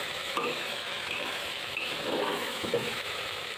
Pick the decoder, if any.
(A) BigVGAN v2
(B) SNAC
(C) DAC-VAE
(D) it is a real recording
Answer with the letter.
C